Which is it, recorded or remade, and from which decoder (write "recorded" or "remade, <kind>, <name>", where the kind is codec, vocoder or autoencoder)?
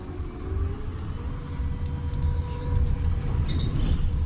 recorded